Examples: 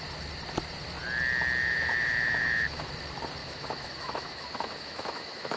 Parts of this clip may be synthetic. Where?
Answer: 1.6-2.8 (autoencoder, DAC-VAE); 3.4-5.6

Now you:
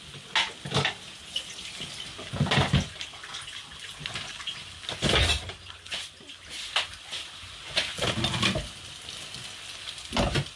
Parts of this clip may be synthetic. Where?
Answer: none

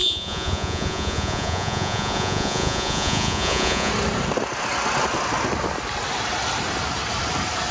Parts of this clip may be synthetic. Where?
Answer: 0.0-3.9 (vocoder, Vocos)

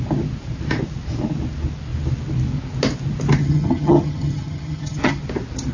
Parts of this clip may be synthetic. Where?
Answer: 3.4-5.2 (vocoder, HiFi-GAN)